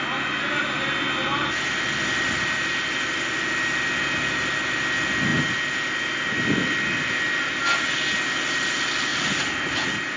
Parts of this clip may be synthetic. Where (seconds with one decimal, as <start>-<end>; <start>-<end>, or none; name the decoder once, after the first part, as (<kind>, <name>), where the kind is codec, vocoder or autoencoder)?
none